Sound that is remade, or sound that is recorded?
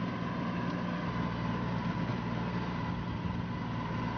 recorded